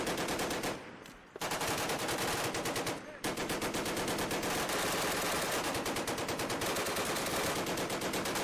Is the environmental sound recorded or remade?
recorded